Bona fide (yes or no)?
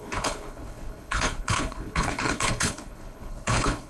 no